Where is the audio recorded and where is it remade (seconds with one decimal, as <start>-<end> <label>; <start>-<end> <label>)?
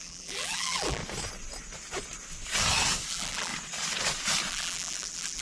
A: 0.0-1.0 remade; 1.0-3.1 recorded; 3.1-3.5 remade; 3.5-4.5 recorded; 4.5-5.4 remade